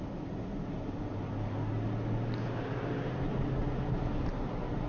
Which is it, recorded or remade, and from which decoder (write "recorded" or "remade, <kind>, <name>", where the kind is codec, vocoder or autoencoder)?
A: recorded